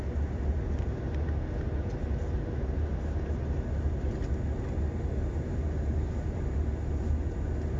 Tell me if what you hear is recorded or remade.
recorded